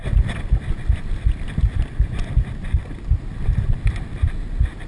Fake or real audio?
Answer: real